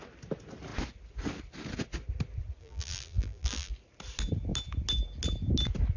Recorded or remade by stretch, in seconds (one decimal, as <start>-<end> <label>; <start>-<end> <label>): 0.0-2.6 recorded; 2.6-3.7 remade; 3.7-6.0 recorded

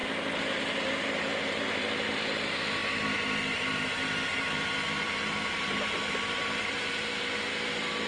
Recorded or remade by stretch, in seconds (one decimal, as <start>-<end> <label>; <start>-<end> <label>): 0.0-0.8 recorded; 0.8-8.1 remade

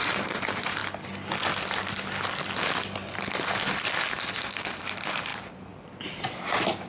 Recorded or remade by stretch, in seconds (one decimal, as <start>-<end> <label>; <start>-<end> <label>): 0.0-0.8 remade; 0.8-4.7 recorded; 4.7-6.9 remade

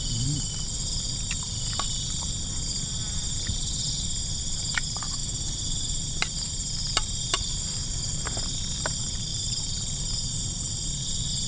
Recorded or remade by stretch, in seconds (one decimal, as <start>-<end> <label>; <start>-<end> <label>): 0.0-5.2 recorded; 5.2-6.5 remade; 6.5-7.4 recorded; 7.4-8.9 remade; 8.9-9.3 recorded; 9.3-10.1 remade; 10.1-11.5 recorded

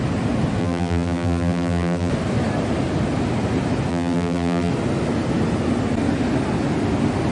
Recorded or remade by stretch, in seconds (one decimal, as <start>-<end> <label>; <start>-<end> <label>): 0.0-0.6 recorded; 0.6-2.1 remade; 2.1-3.9 recorded; 3.9-4.7 remade; 4.7-7.3 recorded

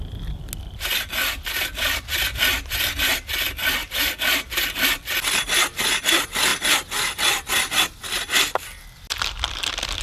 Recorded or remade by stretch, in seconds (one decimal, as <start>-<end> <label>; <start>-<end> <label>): 0.0-3.8 recorded; 3.8-4.6 remade; 4.6-10.0 recorded

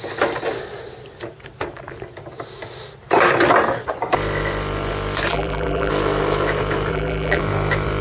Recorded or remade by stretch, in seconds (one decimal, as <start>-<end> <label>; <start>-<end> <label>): 0.0-5.3 recorded; 5.3-5.9 remade; 5.9-6.9 recorded; 6.9-7.4 remade; 7.4-8.0 recorded